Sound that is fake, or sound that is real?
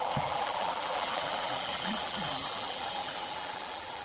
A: fake